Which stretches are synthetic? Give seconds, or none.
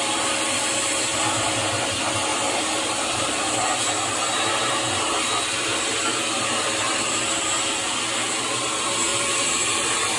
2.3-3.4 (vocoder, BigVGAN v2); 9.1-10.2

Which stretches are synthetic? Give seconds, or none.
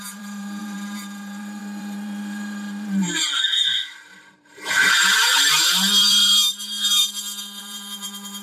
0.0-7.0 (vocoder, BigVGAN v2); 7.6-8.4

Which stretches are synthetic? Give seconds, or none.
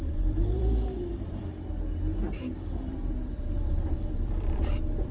0.0-1.5 (vocoder, BigVGAN v2); 2.5-5.1